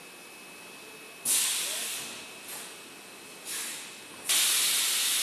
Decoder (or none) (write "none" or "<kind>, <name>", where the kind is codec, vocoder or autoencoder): none